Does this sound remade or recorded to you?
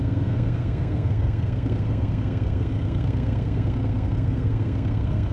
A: remade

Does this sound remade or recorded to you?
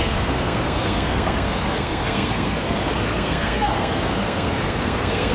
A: remade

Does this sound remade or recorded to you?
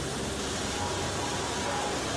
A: recorded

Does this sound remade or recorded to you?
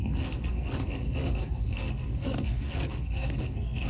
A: remade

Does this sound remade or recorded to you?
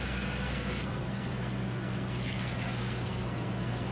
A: remade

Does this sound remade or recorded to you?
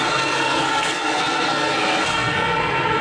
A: remade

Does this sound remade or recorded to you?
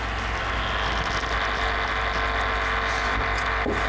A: recorded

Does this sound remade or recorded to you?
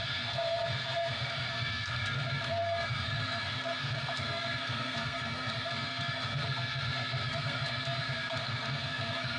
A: remade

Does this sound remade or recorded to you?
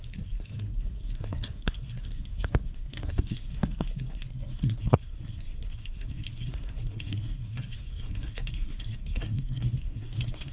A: remade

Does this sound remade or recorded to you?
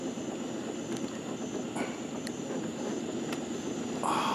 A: recorded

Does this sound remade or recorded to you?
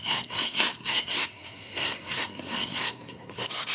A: remade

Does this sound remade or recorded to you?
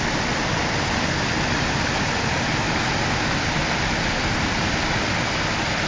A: recorded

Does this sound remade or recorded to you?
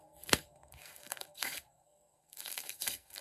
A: remade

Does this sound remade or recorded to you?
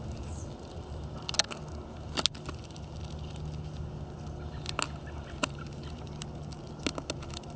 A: recorded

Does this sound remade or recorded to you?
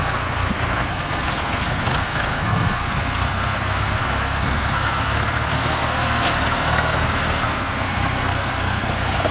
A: remade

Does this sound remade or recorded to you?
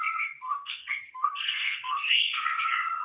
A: remade